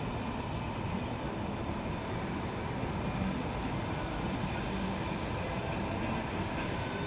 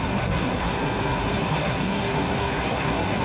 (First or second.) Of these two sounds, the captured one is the first